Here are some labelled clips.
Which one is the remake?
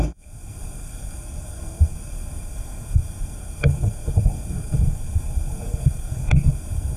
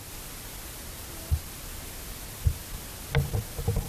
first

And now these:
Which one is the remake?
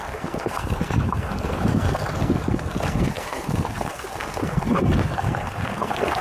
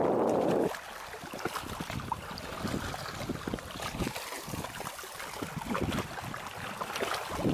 first